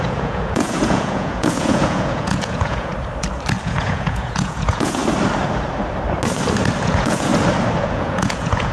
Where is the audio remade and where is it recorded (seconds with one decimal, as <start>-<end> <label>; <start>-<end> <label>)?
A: 0.0-2.9 remade; 2.9-3.6 recorded; 3.6-5.0 remade; 5.0-6.8 recorded; 6.8-7.3 remade; 7.3-7.8 recorded; 7.8-8.7 remade